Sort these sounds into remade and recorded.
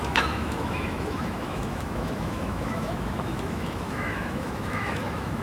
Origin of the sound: remade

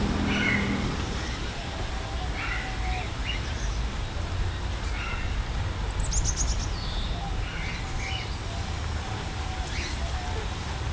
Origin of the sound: recorded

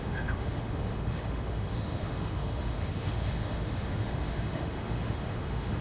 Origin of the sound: remade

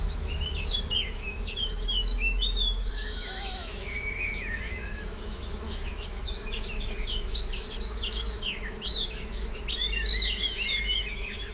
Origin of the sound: remade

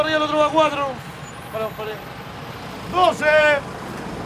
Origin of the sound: recorded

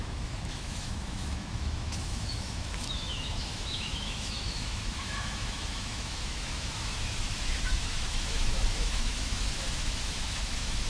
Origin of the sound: remade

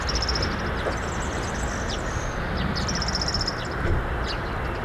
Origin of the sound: recorded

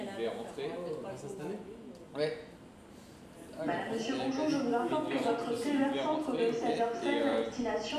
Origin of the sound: recorded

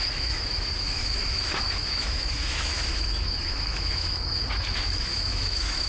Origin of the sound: remade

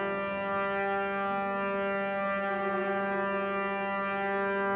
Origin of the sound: recorded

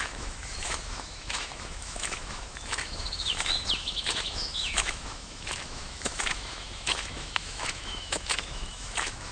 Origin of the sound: remade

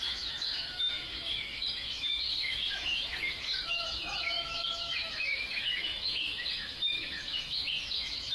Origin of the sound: remade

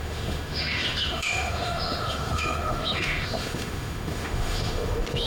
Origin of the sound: remade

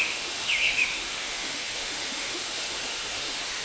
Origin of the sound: remade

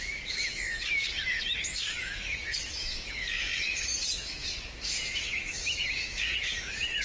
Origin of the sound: remade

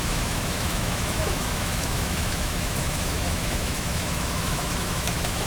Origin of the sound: remade